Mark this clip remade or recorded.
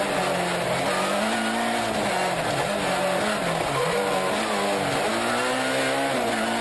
recorded